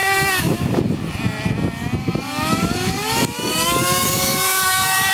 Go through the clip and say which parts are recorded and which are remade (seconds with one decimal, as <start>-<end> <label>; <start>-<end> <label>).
0.0-0.8 remade; 0.8-2.0 recorded; 2.0-5.1 remade